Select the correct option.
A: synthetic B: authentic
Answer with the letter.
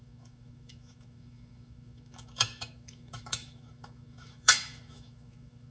A